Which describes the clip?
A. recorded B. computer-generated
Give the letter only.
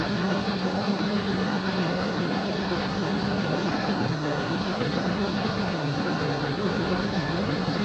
B